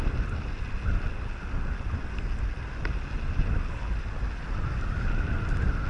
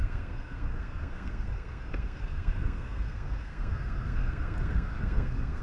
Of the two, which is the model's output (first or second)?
second